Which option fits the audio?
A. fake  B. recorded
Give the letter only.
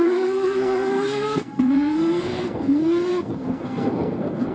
A